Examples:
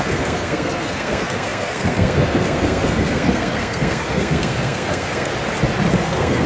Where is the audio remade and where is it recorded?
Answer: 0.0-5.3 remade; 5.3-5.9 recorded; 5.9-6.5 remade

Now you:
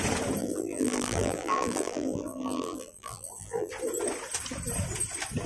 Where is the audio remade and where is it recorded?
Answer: 0.0-0.4 recorded; 0.4-3.7 remade; 3.7-5.5 recorded

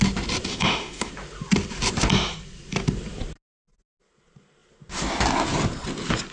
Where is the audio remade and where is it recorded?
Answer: 0.0-0.5 recorded; 0.5-1.1 remade; 1.1-6.3 recorded